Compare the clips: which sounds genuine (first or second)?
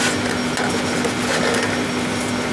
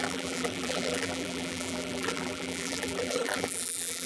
first